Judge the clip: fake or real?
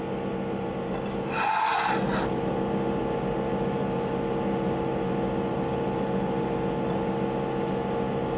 real